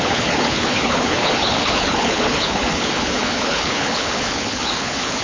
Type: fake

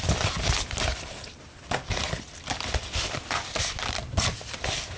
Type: real